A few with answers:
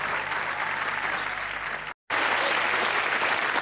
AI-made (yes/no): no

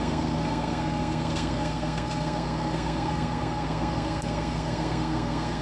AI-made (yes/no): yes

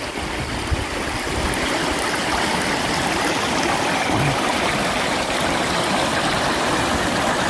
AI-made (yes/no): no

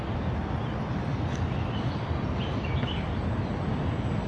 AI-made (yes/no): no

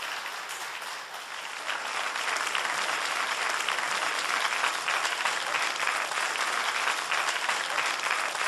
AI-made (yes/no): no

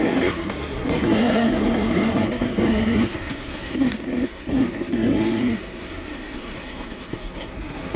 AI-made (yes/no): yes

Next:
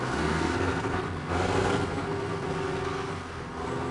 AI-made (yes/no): yes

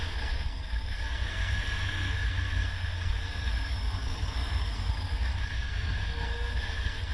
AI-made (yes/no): yes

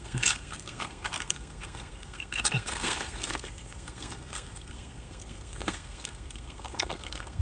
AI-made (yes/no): yes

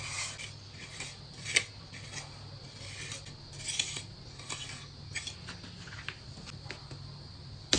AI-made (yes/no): no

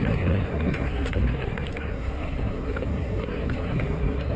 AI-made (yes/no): yes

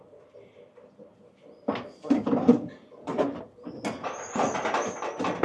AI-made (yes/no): no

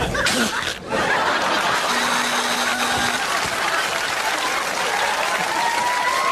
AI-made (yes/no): no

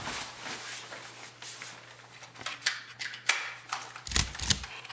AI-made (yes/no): no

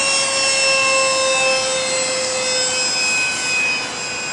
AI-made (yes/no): no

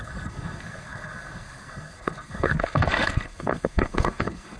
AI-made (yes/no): yes